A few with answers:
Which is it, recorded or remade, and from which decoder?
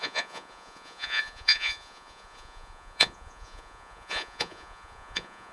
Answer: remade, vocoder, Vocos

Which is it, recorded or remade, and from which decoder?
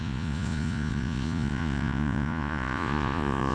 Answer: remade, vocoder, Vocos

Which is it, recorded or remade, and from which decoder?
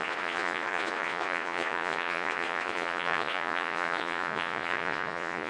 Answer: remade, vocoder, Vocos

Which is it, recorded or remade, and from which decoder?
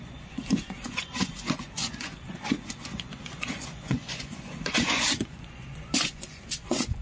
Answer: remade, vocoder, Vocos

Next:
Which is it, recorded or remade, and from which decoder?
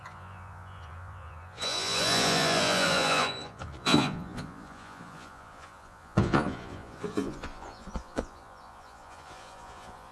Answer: remade, vocoder, Vocos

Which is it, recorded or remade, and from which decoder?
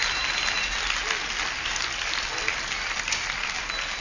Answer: recorded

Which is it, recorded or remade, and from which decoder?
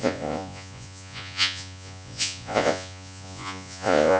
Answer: remade, vocoder, Vocos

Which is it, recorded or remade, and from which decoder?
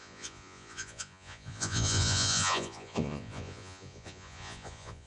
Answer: remade, vocoder, Vocos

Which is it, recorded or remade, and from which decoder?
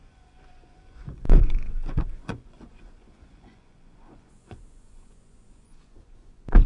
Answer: remade, vocoder, Vocos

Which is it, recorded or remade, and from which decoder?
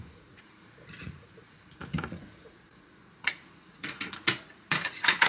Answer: remade, vocoder, Vocos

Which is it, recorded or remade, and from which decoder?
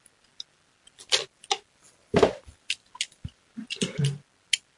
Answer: recorded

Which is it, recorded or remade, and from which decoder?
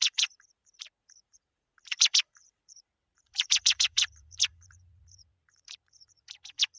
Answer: remade, vocoder, Vocos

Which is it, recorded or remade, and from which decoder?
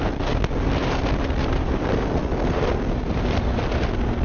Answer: recorded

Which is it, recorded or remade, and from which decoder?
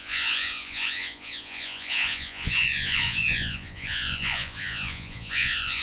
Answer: remade, vocoder, Vocos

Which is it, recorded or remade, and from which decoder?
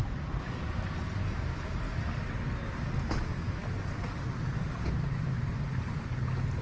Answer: recorded